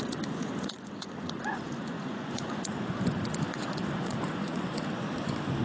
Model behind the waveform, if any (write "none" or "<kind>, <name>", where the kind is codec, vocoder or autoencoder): vocoder, Vocos